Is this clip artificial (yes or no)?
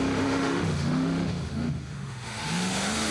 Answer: yes